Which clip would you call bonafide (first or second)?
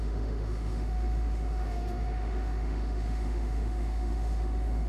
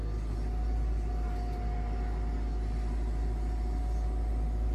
second